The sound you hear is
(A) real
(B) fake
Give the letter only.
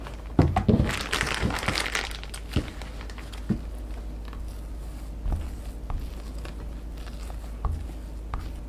A